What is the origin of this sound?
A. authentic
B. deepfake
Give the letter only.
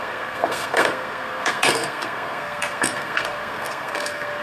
B